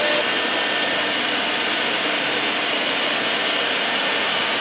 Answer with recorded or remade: recorded